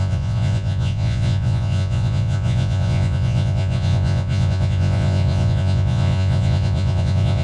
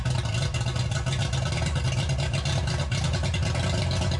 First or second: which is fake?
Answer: first